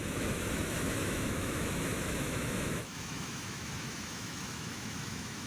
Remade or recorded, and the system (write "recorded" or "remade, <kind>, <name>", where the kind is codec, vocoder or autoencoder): remade, autoencoder, DAC-VAE